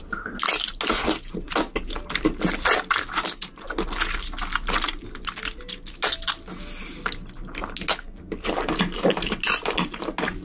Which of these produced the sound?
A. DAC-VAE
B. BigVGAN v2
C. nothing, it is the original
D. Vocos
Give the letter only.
C